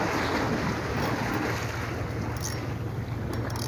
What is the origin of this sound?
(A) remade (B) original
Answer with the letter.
B